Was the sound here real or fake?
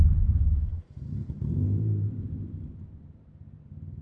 fake